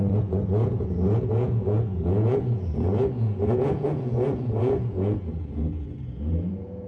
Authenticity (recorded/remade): remade